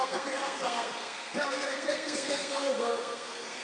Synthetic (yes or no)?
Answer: yes